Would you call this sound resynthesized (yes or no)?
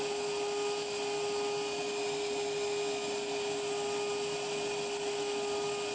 no